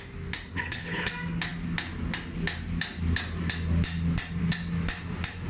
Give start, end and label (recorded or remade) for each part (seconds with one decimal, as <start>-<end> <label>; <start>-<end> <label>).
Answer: 0.0-0.5 recorded; 0.5-1.1 remade; 1.1-5.5 recorded